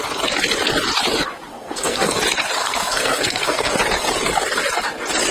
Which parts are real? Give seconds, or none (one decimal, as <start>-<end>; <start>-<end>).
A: 0.0-1.5; 2.2-2.6; 3.7-5.3